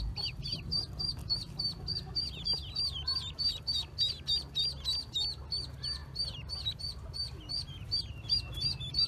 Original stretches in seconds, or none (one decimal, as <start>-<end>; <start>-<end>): 0.0-1.2; 1.9-2.6; 3.6-6.0; 6.7-7.2; 8.0-9.1